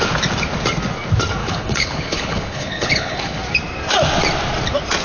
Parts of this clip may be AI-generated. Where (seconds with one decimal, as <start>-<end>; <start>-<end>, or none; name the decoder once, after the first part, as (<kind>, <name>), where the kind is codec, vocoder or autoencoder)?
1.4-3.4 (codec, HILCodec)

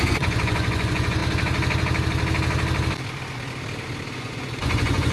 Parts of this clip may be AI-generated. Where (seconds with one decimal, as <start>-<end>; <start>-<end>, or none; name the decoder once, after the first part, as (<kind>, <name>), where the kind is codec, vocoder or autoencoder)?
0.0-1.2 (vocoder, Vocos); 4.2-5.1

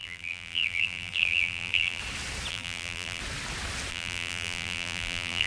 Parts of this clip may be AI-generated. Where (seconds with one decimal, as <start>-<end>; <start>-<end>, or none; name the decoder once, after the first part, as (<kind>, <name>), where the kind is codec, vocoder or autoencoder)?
0.0-2.0 (vocoder, BigVGAN v2); 2.5-3.2; 3.9-5.5

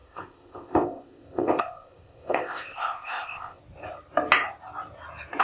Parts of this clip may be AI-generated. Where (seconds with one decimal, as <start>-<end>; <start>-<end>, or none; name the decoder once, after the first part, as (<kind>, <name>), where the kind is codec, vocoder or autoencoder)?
0.0-3.6 (codec, ZipCodec)

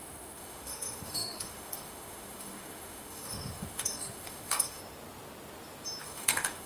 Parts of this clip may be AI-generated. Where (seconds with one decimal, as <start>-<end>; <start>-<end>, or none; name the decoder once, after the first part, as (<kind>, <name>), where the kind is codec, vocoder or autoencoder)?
0.0-4.8 (autoencoder, DAC-VAE); 6.0-6.7

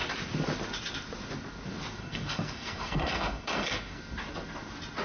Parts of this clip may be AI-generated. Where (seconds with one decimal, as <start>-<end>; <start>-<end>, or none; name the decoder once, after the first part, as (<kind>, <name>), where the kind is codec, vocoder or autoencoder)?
2.0-4.0 (codec, SNAC)

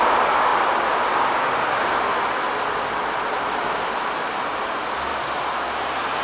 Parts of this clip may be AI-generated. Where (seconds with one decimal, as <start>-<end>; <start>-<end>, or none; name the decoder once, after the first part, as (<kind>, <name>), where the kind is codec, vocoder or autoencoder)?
5.1-6.2 (vocoder, BigVGAN v2)